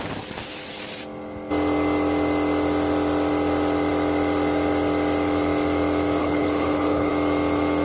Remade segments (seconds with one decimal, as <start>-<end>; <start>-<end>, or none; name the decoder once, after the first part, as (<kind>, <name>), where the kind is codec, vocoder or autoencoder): 6.2-7.1 (codec, HILCodec)